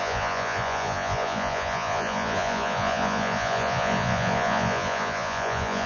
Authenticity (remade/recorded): remade